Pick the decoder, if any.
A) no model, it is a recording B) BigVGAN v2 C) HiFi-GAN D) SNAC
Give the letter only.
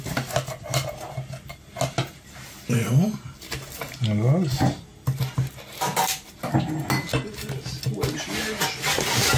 A